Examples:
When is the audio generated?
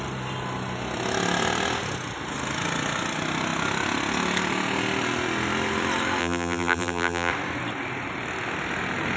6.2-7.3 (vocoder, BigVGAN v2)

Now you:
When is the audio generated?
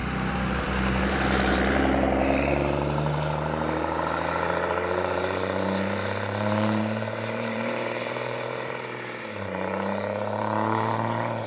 0.0-11.5 (vocoder, BigVGAN v2)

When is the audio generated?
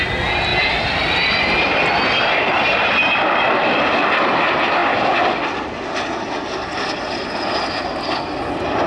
0.5-2.6 (vocoder, BigVGAN v2)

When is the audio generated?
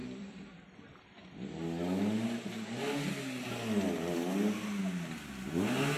0.0-0.6 (vocoder, BigVGAN v2)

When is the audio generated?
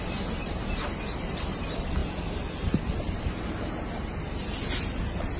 0.0-2.0 (vocoder, BigVGAN v2); 4.2-5.4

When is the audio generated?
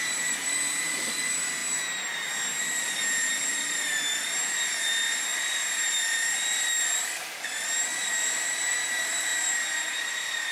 0.0-1.6 (vocoder, BigVGAN v2); 2.6-9.3; 10.1-10.5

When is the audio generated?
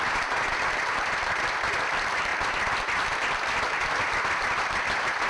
none